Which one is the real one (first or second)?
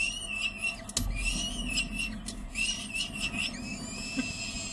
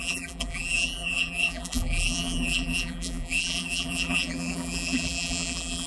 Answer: first